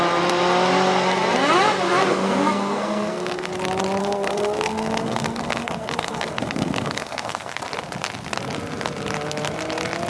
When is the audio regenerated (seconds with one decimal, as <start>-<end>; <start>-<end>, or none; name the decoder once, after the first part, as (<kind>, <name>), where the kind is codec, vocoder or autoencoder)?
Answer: 2.1-3.5 (codec, SNAC); 4.0-7.6